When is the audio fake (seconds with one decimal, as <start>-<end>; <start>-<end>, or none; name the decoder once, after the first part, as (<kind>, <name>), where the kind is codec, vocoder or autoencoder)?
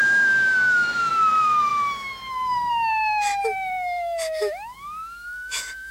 0.0-5.9 (autoencoder, DAC-VAE)